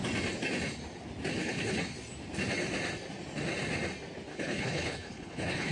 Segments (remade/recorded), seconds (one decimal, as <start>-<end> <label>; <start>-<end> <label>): 0.0-1.3 recorded; 1.3-1.8 remade; 1.8-4.3 recorded; 4.3-5.7 remade